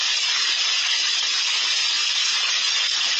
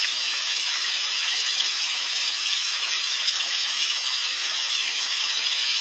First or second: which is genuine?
first